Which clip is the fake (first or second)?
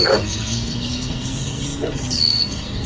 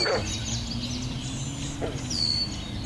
first